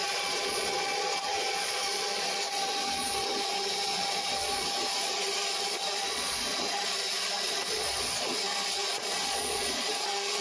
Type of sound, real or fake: fake